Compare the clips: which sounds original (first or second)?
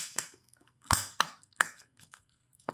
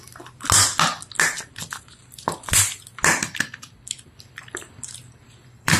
second